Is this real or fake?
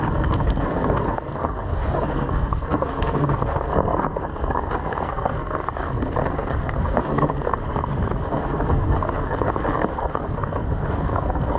fake